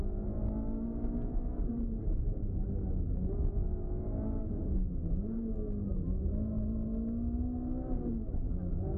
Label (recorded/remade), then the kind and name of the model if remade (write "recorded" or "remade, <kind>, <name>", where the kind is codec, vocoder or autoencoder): recorded